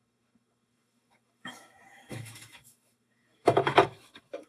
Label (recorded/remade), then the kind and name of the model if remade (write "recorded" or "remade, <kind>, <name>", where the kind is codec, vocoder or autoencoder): remade, autoencoder, DAC-VAE